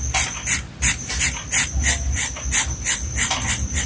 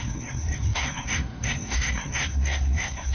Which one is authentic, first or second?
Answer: first